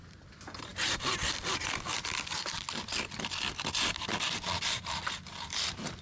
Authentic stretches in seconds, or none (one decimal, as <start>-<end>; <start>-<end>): 0.0-6.0